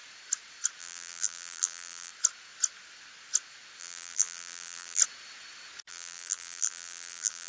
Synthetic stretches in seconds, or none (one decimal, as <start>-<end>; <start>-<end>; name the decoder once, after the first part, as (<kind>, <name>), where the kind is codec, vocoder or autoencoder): 0.8-2.1 (vocoder, BigVGAN v2); 3.8-5.0; 5.9-7.5